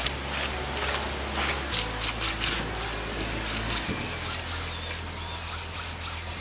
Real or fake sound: real